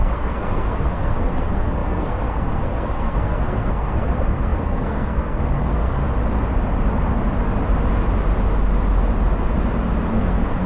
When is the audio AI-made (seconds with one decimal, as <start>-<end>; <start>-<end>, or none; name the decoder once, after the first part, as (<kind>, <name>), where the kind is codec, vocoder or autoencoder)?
0.0-6.0 (codec, SNAC); 10.1-10.7

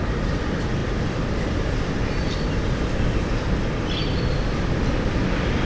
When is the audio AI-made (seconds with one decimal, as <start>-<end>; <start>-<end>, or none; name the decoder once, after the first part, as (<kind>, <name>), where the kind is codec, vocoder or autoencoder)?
none

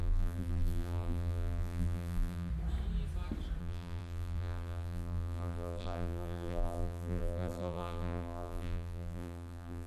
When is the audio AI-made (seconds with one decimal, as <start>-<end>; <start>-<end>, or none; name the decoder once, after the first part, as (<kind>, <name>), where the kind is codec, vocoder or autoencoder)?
0.0-2.5 (vocoder, BigVGAN v2); 3.6-9.9

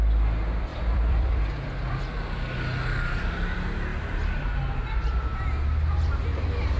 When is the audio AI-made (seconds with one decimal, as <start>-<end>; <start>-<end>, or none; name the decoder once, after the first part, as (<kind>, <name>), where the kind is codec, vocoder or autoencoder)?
0.7-2.0 (vocoder, BigVGAN v2)

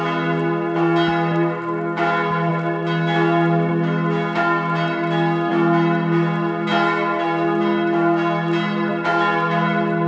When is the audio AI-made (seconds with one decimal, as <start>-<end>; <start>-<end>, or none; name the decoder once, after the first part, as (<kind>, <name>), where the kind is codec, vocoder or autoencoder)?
none